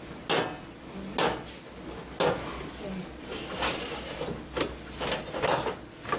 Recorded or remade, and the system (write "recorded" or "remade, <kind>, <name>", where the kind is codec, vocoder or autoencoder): recorded